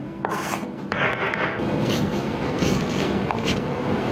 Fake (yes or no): yes